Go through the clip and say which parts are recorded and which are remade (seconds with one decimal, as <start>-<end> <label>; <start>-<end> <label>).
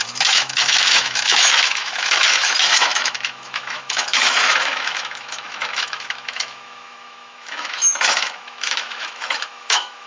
0.0-10.1 remade